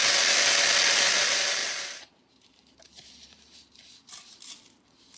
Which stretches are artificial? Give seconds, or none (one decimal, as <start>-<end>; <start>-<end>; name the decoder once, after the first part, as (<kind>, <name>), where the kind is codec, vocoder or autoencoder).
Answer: 1.1-5.2 (vocoder, BigVGAN v2)